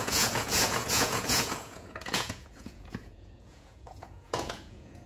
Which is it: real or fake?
fake